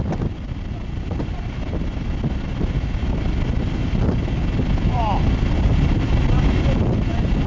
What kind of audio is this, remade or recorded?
recorded